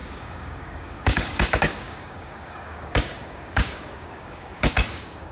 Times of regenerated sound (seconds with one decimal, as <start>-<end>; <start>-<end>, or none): 0.0-5.3